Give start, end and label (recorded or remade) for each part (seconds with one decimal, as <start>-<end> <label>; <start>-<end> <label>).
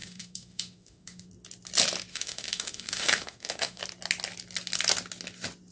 0.0-1.3 remade; 1.3-2.1 recorded; 2.1-3.8 remade; 3.8-5.7 recorded